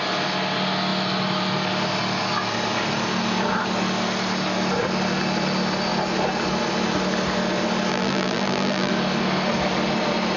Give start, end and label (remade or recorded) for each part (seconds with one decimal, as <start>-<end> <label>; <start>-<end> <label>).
0.0-7.9 recorded; 7.9-8.9 remade; 8.9-10.4 recorded